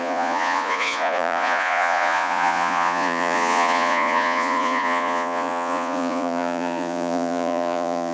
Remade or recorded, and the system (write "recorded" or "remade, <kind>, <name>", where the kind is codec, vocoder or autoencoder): remade, vocoder, Vocos